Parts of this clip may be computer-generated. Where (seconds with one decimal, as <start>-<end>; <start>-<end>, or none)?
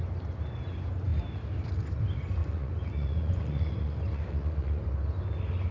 2.4-4.8